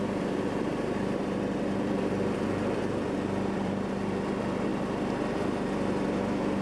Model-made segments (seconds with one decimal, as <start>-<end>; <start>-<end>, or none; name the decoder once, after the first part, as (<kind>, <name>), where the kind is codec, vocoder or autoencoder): 0.0-4.7 (vocoder, BigVGAN v2)